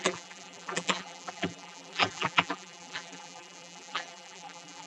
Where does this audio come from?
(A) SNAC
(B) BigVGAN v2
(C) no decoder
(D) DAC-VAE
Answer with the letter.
B